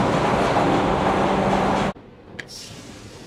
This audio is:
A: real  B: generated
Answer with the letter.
A